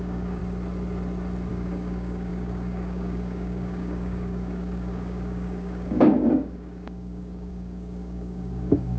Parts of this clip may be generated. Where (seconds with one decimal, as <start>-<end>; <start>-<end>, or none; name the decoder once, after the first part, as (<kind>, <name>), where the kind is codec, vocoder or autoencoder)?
0.0-0.4 (codec, DAC); 1.5-9.0